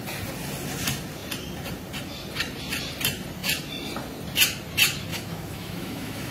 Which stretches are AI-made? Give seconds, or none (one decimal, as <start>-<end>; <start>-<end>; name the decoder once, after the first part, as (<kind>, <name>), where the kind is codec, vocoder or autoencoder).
5.1-6.3 (autoencoder, DAC-VAE)